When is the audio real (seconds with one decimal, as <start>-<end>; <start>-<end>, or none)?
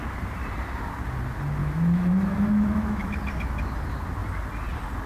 0.0-1.6; 3.1-5.1